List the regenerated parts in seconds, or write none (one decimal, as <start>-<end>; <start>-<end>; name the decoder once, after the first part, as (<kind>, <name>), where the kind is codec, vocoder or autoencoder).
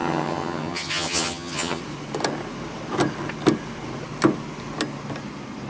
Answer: 0.0-1.8 (vocoder, HiFi-GAN)